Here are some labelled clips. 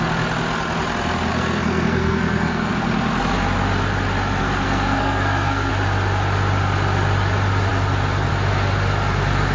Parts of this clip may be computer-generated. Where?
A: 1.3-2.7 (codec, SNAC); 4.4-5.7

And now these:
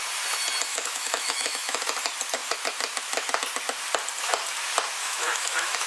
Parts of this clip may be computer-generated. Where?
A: 0.7-1.8 (autoencoder, DAC-VAE); 5.0-5.9

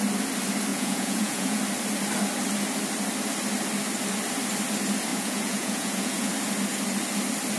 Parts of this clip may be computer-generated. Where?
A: 0.7-1.6 (vocoder, Vocos); 5.1-6.3

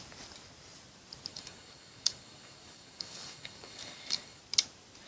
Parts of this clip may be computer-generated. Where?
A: 1.3-4.4 (codec, DAC)

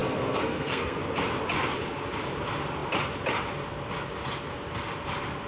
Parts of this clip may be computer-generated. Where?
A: 0.0-1.0 (codec, SNAC)